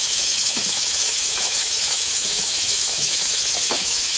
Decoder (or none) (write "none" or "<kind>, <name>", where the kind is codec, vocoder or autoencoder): autoencoder, DAC-VAE